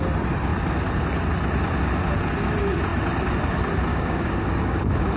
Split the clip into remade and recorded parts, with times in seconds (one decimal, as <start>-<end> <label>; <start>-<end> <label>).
0.0-3.9 recorded; 3.9-5.2 remade